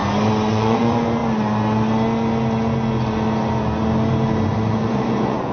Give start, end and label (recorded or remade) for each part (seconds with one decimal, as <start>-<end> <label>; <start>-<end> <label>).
0.0-0.5 recorded; 0.5-1.2 remade; 1.2-4.5 recorded; 4.5-5.5 remade